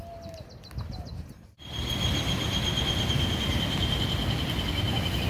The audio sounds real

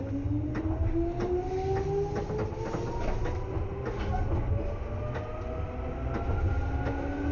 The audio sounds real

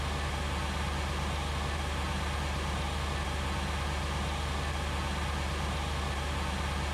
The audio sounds real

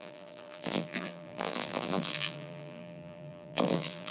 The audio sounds fake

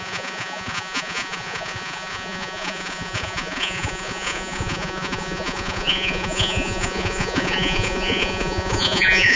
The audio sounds fake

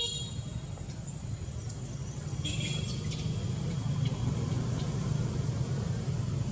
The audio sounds real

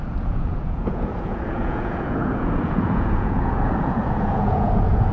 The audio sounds fake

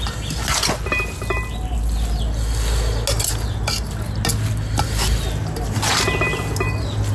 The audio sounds real